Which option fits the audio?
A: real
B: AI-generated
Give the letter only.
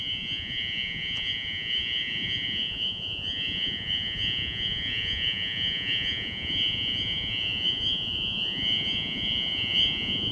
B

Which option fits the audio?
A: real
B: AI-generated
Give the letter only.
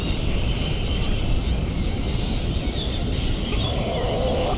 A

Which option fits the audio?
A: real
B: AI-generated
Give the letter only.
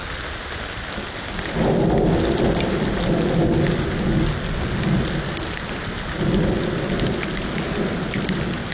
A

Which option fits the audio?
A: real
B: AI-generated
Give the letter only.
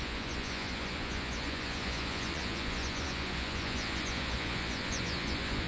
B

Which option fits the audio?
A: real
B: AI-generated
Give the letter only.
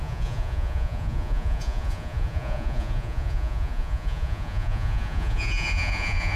B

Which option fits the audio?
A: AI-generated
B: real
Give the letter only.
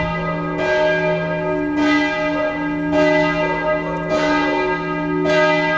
B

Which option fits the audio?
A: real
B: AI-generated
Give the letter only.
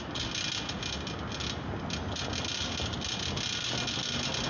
A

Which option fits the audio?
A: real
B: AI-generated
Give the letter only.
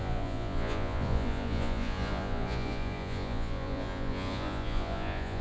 B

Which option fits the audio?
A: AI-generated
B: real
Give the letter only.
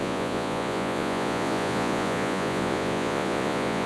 A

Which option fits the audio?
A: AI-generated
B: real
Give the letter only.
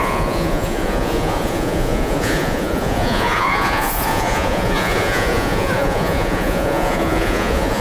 A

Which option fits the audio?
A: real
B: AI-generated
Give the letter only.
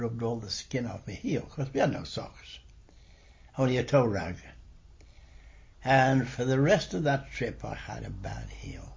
A